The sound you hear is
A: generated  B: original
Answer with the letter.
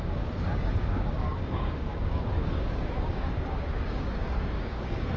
A